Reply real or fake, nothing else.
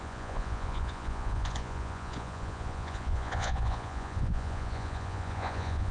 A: fake